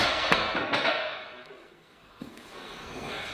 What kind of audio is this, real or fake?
fake